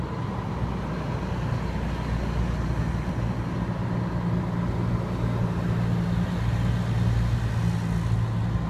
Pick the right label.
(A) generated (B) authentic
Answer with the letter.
B